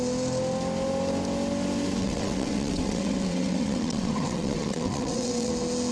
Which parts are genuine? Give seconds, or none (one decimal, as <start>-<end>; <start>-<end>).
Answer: 0.0-2.0; 5.5-5.9